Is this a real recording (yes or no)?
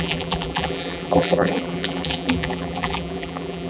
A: no